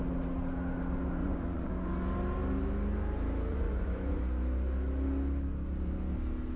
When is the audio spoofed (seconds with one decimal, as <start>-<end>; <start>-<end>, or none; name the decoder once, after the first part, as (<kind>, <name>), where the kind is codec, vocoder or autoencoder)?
1.2-1.7 (vocoder, Vocos); 3.5-4.2